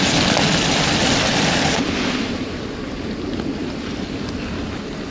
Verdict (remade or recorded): recorded